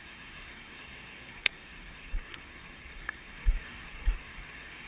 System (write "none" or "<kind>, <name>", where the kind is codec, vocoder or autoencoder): codec, SNAC